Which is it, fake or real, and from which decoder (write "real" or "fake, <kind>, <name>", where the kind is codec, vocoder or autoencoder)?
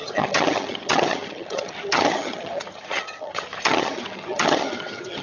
fake, vocoder, HiFi-GAN